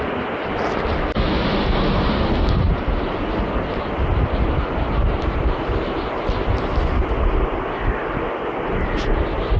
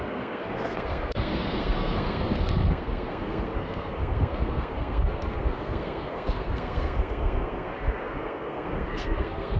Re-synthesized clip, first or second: second